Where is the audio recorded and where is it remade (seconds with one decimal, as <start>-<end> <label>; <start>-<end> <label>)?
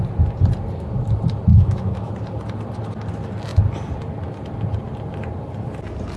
0.0-1.5 recorded; 1.5-2.1 remade; 2.1-6.2 recorded